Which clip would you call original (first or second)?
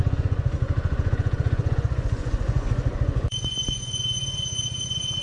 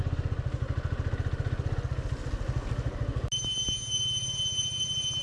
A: second